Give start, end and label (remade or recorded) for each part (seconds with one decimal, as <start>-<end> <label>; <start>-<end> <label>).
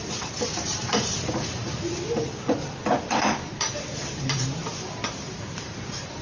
0.0-4.7 remade; 4.7-5.5 recorded; 5.5-6.2 remade